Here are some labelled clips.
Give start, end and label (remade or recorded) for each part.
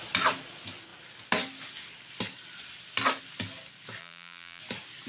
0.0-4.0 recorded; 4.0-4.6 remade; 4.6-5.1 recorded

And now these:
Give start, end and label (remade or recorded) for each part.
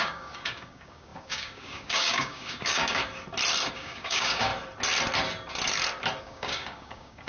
0.0-3.0 remade; 3.0-3.7 recorded; 3.7-4.5 remade; 4.5-6.2 recorded; 6.2-7.3 remade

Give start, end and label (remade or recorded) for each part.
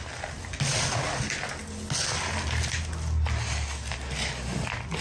0.0-5.0 recorded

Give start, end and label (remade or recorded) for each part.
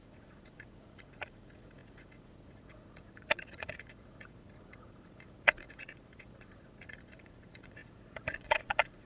0.0-9.1 remade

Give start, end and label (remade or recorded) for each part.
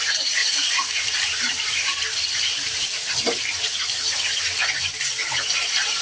0.0-0.4 recorded; 0.4-3.6 remade; 3.6-6.0 recorded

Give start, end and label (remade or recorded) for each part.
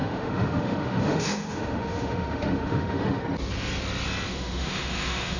0.0-3.2 remade; 3.2-4.3 recorded; 4.3-5.4 remade